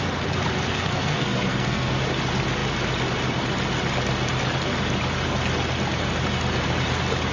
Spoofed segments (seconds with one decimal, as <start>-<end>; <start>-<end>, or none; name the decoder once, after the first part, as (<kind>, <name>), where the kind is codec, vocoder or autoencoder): 0.7-2.0 (codec, SNAC)